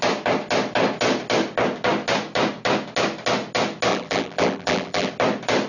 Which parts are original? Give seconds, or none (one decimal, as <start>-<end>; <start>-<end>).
0.0-3.9; 5.1-5.7